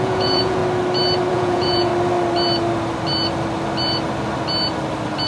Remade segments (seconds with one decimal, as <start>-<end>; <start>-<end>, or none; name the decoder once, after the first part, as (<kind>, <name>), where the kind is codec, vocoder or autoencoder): 0.0-0.6 (vocoder, Vocos); 1.3-1.9